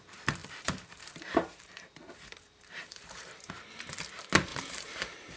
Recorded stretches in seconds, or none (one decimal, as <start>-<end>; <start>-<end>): 0.0-0.4; 3.5-4.5